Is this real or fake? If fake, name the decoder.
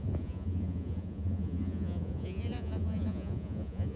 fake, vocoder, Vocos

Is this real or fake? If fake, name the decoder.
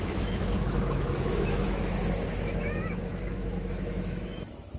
fake, autoencoder, DAC-VAE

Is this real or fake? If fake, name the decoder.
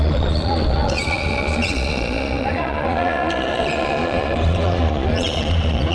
fake, vocoder, Vocos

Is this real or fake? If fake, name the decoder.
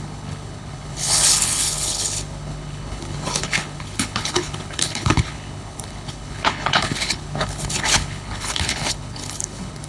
fake, codec, HILCodec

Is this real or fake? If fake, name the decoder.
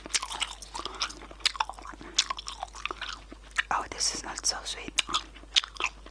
real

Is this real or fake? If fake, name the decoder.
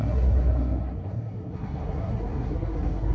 fake, codec, SNAC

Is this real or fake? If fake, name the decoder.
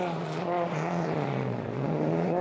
fake, vocoder, Vocos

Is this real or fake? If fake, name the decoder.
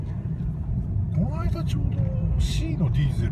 fake, vocoder, BigVGAN v2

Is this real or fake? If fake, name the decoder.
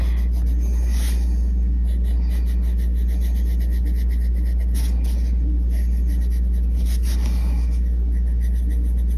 real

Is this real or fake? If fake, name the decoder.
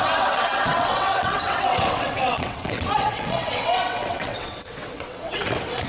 fake, vocoder, WaveNeXt